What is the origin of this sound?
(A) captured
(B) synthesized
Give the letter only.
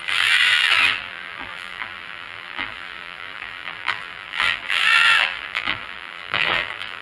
B